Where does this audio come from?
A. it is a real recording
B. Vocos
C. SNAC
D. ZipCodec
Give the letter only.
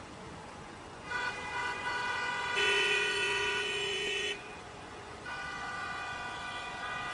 B